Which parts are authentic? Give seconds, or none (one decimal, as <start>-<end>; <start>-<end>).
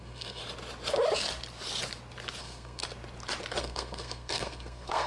0.4-2.4; 2.8-3.6